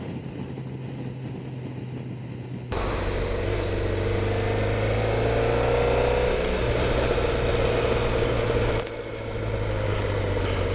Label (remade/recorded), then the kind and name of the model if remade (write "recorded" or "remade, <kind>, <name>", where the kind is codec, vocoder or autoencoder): recorded